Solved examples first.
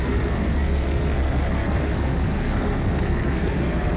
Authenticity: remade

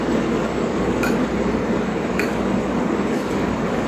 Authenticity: remade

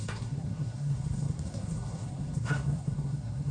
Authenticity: remade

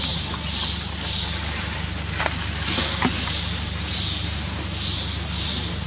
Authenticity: recorded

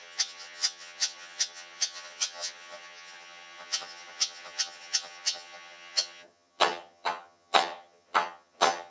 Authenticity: remade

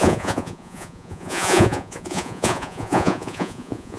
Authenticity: remade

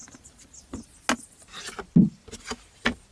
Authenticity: recorded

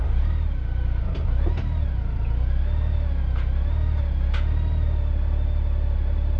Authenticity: recorded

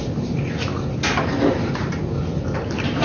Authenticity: recorded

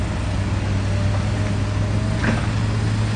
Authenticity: recorded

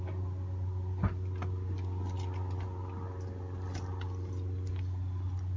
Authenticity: recorded